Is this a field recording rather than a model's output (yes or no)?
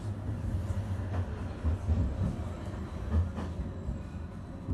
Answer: yes